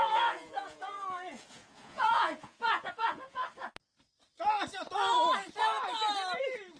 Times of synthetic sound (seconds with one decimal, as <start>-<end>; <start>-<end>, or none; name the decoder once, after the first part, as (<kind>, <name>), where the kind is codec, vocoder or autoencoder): 0.0-3.4 (vocoder, Vocos)